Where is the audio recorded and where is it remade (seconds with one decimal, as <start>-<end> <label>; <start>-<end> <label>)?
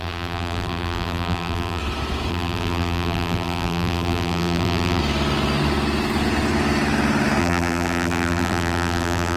0.0-1.8 remade; 1.8-2.3 recorded; 2.3-5.0 remade; 5.0-7.4 recorded; 7.4-9.4 remade